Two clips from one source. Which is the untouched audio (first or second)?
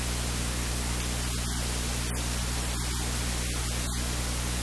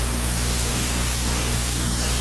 first